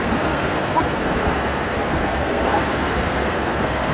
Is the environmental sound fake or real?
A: fake